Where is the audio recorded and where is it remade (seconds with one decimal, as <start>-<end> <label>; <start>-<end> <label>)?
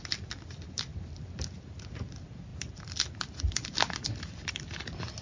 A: 0.0-5.2 recorded